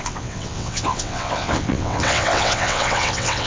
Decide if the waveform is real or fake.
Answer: fake